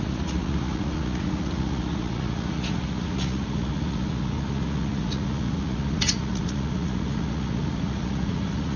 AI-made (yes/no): yes